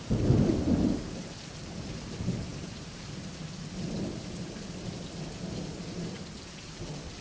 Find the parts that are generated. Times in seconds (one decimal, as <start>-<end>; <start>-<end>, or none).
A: none